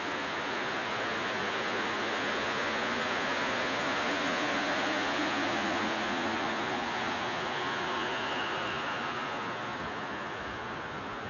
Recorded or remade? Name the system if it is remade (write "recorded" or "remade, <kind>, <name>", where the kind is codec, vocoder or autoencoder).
remade, vocoder, Vocos